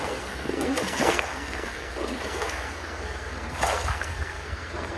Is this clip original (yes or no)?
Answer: no